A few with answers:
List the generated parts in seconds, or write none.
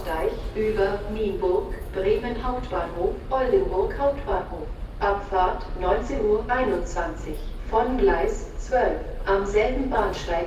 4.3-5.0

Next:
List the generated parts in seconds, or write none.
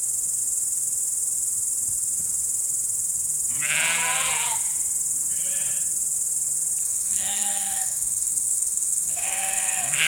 6.8-10.1